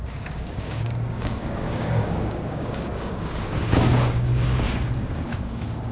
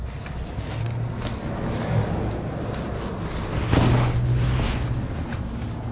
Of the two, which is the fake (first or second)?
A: first